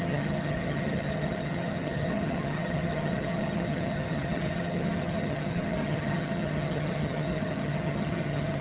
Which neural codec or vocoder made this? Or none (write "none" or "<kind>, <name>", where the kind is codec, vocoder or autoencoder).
vocoder, HiFi-GAN